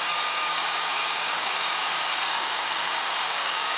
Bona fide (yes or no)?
no